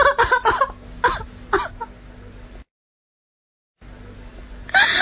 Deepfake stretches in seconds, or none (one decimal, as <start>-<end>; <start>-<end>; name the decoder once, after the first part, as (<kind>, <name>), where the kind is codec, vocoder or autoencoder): none